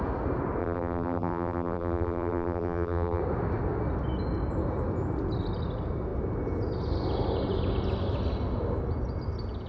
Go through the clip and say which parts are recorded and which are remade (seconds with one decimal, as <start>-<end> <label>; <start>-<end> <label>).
0.0-0.6 recorded; 0.6-3.2 remade; 3.2-9.7 recorded